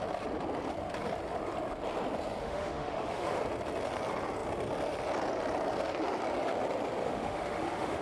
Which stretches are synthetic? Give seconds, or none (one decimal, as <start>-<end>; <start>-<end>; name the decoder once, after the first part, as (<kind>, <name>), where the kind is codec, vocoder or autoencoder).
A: 2.4-3.4 (autoencoder, DAC-VAE); 7.0-8.0